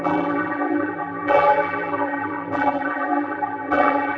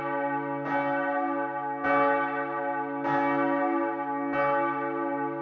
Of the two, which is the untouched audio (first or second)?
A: second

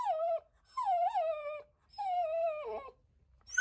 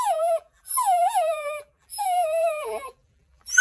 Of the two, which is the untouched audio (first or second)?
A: first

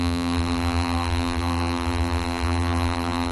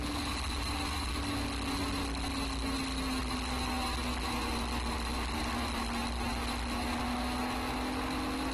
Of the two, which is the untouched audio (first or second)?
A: second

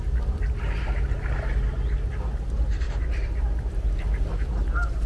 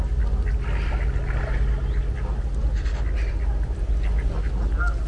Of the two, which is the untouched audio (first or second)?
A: second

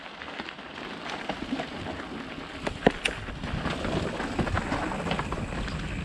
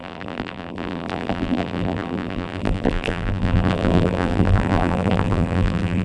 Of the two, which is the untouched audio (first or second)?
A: first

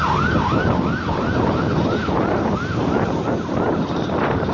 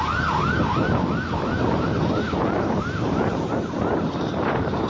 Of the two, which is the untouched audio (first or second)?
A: second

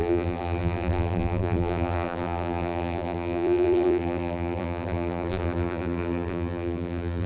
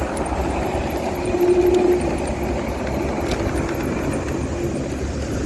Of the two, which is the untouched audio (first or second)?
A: second